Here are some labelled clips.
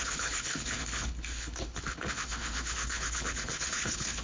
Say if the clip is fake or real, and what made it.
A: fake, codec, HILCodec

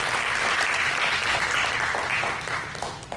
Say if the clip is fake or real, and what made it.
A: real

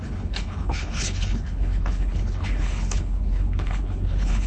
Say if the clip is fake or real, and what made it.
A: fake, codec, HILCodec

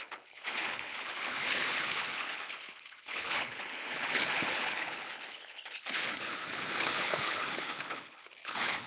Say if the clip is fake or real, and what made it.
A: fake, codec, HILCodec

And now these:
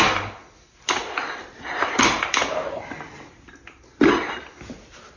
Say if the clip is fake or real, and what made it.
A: real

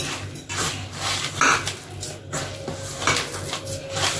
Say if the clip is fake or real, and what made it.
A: real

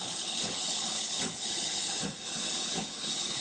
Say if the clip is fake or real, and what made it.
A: fake, codec, HILCodec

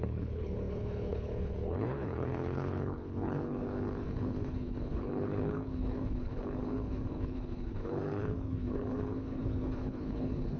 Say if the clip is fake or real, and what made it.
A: fake, codec, HILCodec